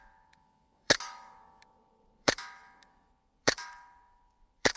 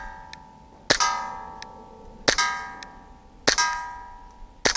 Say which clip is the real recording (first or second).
second